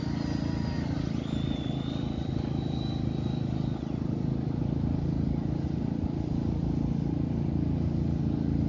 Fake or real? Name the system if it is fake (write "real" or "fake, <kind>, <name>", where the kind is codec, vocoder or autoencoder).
real